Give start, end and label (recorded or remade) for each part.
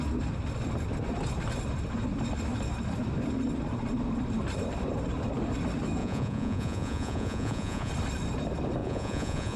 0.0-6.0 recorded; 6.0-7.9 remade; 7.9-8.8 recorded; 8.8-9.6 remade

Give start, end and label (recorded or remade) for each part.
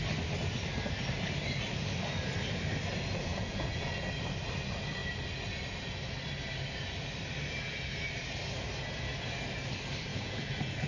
0.0-3.3 recorded; 3.3-3.9 remade; 3.9-10.1 recorded; 10.1-10.9 remade